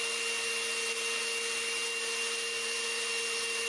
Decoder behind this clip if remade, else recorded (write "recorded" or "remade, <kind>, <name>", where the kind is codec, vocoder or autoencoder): recorded